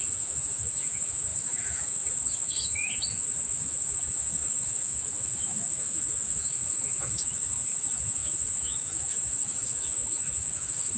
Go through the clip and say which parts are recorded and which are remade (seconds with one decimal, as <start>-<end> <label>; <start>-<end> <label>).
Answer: 0.0-11.0 remade